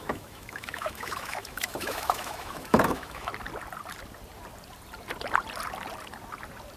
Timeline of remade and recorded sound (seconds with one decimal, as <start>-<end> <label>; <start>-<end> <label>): 0.0-3.3 remade; 3.3-6.8 recorded